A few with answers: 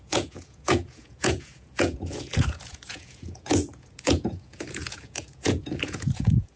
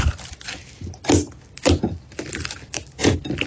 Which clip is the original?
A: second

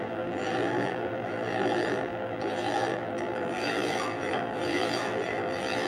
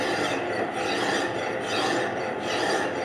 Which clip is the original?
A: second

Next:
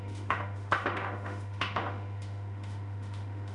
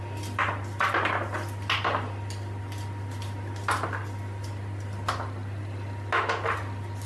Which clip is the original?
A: second